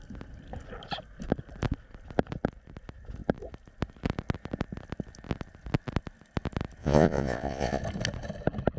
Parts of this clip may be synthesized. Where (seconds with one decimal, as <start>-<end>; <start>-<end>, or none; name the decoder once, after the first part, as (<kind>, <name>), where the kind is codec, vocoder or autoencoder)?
6.8-7.8 (vocoder, Vocos)